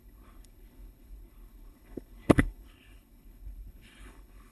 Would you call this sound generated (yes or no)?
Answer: yes